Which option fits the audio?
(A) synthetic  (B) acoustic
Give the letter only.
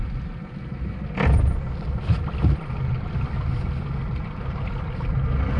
B